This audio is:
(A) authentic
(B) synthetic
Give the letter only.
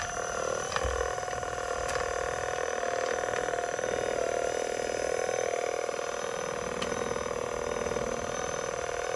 A